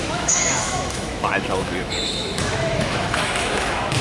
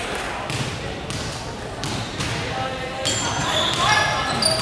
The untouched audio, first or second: second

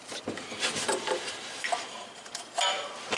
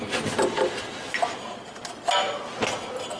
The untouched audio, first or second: second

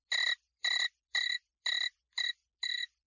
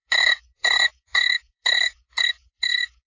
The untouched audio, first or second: first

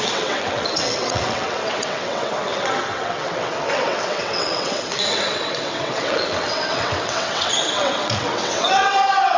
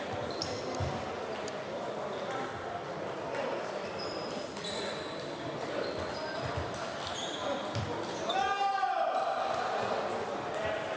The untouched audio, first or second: second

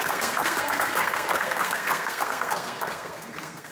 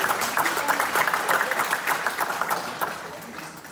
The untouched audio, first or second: second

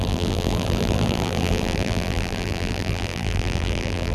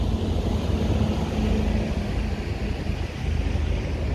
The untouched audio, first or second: second